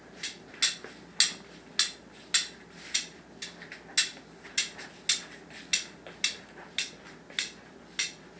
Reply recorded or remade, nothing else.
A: recorded